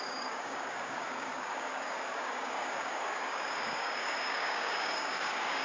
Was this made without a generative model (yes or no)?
no